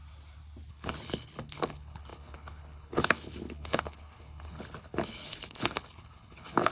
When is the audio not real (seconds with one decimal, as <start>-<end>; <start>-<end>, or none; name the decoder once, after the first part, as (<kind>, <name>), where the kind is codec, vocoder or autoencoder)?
0.7-6.7 (codec, HILCodec)